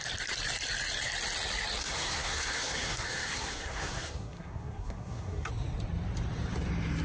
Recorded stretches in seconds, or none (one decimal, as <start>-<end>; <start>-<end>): 0.0-1.8; 5.5-7.0